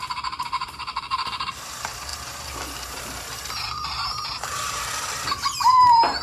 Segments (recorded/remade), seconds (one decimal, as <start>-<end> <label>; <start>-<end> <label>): 0.0-6.2 remade